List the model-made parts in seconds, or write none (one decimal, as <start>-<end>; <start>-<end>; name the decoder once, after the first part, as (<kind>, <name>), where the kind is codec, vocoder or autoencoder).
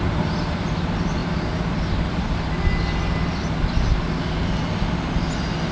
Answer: none